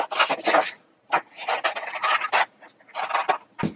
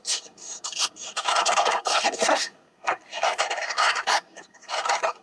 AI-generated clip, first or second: second